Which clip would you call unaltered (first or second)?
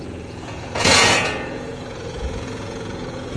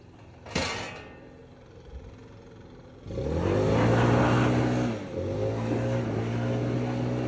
second